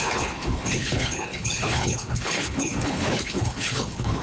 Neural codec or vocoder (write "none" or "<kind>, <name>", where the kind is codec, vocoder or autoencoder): codec, HILCodec